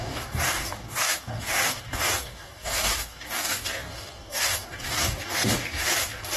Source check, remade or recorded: remade